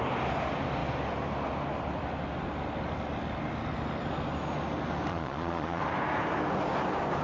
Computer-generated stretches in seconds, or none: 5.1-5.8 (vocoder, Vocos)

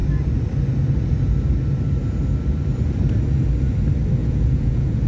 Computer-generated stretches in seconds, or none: 4.2-5.1 (vocoder, Vocos)

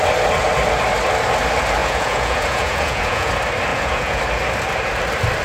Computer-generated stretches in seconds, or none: 1.8-3.3 (vocoder, Vocos); 3.7-4.2

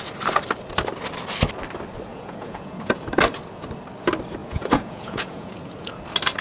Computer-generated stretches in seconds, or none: 2.1-3.0 (vocoder, Vocos); 4.4-5.9

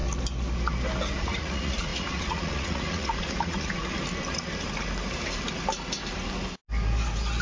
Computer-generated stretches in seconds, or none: 1.2-3.9 (vocoder, Vocos)

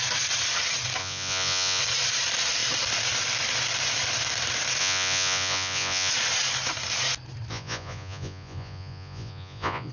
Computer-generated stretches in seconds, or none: 1.0-1.8 (vocoder, Vocos); 4.8-6.1; 7.5-9.9

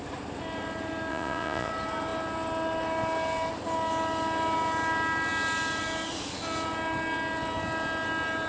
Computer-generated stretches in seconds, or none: 1.1-1.7 (vocoder, Vocos)

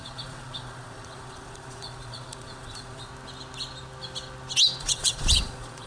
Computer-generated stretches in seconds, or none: 0.0-3.1 (vocoder, Vocos); 4.8-5.9